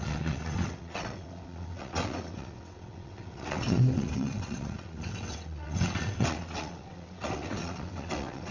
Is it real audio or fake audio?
fake